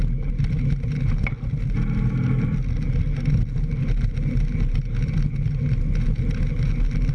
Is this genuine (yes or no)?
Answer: yes